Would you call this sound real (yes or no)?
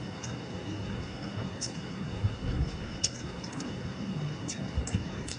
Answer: no